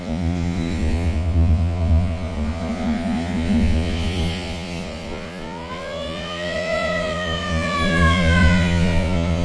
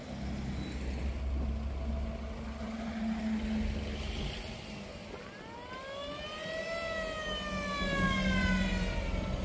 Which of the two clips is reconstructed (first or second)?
first